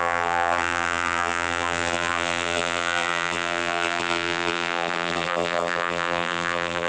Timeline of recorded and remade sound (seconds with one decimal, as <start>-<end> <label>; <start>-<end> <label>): 0.0-6.9 remade